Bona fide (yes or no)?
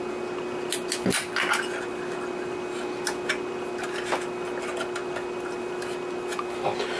yes